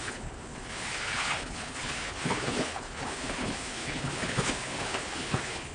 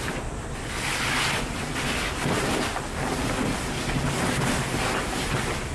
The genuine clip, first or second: second